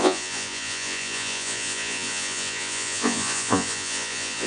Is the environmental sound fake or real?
fake